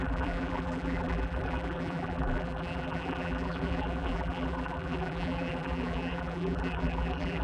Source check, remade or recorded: remade